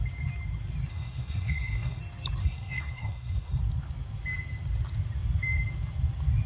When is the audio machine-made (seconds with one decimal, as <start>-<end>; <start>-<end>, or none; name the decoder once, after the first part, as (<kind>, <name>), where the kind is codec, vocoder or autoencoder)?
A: 0.9-2.0 (codec, SNAC); 2.4-3.6